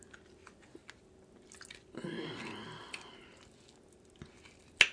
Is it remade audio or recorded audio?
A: recorded